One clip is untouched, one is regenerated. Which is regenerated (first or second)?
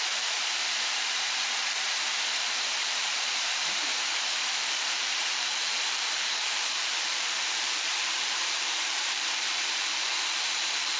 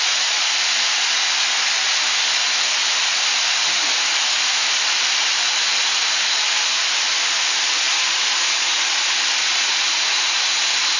first